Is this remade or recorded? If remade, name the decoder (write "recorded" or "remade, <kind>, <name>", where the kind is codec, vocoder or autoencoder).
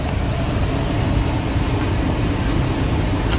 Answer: recorded